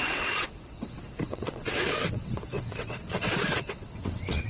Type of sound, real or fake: fake